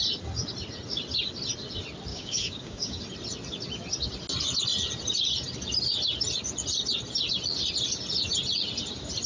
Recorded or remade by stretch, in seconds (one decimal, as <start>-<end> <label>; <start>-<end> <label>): 0.0-2.1 recorded; 2.1-3.0 remade; 3.0-9.3 recorded